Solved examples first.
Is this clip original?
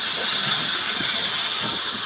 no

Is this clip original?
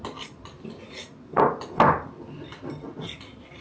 yes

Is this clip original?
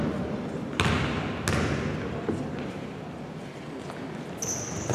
yes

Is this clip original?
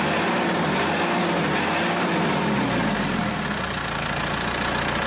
yes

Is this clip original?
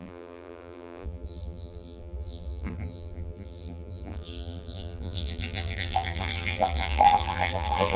no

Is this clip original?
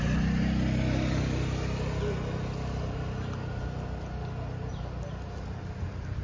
yes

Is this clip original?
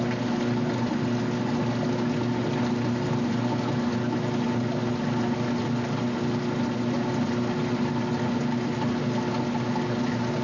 yes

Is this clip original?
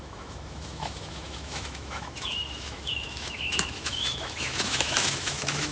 no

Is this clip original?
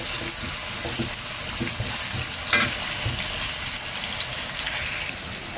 yes